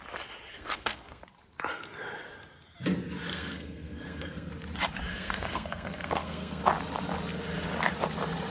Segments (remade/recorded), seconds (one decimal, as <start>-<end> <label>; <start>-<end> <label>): 0.0-0.5 recorded; 0.5-1.2 remade; 1.2-3.3 recorded; 3.3-4.5 remade; 4.5-5.1 recorded; 5.1-6.6 remade; 6.6-8.5 recorded